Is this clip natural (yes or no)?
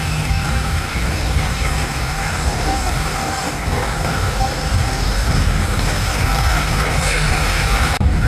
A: no